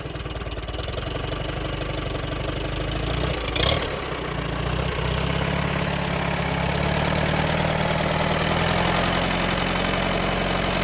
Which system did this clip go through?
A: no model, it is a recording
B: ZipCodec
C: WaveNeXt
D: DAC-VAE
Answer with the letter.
A